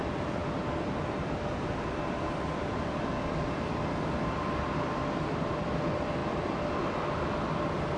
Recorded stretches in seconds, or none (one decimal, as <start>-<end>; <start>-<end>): 0.0-8.0